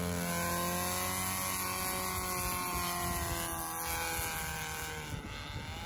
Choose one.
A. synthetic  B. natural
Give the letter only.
B